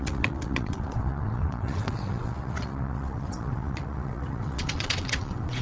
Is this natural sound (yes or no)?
no